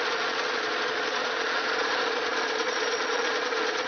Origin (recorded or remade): remade